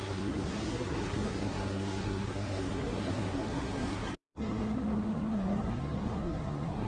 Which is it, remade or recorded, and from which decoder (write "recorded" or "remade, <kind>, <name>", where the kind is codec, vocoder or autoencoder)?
remade, codec, SNAC